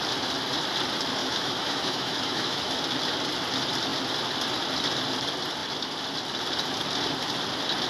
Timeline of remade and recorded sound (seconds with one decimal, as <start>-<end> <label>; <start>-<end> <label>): 0.0-1.2 recorded; 1.2-2.7 remade; 2.7-7.9 recorded

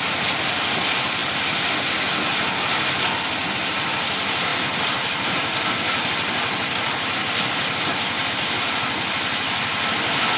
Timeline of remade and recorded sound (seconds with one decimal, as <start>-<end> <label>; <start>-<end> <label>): 0.0-10.4 recorded